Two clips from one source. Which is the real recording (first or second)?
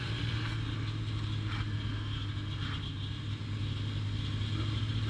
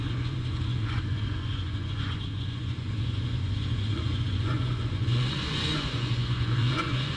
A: first